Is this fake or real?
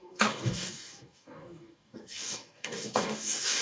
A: fake